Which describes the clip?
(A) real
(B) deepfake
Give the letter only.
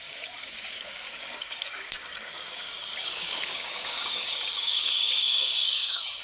B